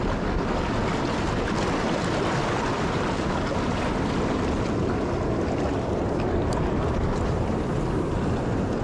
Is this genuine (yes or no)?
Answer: yes